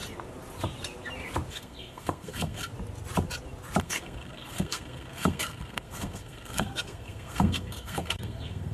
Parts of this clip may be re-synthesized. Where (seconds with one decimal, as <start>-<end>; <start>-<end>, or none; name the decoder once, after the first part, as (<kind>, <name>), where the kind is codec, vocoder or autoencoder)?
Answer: 1.5-2.7 (codec, SNAC); 3.8-8.7